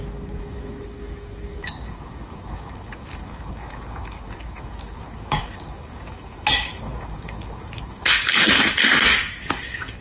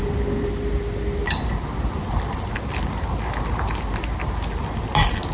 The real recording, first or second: second